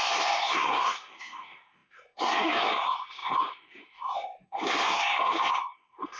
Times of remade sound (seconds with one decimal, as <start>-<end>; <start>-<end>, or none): 0.0-6.2